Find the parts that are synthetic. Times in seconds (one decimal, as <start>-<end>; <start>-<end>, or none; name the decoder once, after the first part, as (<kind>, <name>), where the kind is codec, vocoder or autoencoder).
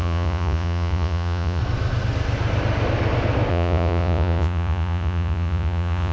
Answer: 0.0-1.6 (vocoder, Vocos); 3.5-6.1